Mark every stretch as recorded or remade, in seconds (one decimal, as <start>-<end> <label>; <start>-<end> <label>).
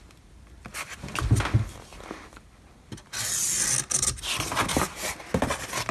0.0-5.9 recorded